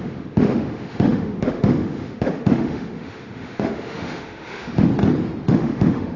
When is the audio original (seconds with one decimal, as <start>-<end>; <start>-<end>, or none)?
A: 4.9-5.5

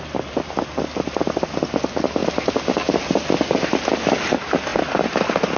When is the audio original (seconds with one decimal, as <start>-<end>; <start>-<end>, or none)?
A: 0.0-5.6

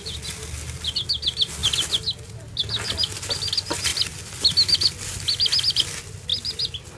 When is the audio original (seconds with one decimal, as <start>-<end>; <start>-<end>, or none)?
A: 0.0-7.0

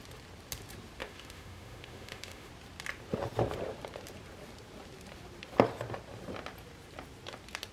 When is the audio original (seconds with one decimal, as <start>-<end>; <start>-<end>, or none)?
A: 0.0-1.0; 2.5-7.7

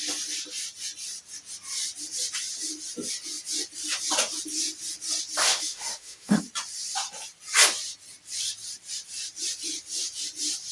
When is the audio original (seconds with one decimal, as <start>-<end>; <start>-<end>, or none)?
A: 0.0-5.4; 6.4-10.7

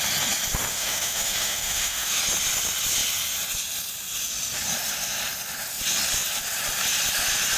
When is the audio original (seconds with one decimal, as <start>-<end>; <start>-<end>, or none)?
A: 0.0-0.7; 2.2-7.6

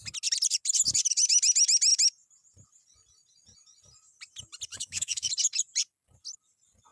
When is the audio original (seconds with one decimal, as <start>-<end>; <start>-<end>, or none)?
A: 0.0-4.7; 5.3-6.9